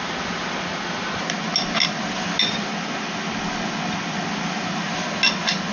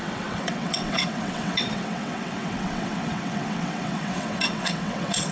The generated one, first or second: second